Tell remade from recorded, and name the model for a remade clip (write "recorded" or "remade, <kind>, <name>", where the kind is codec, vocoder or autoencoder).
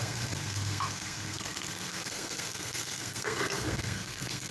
remade, codec, SNAC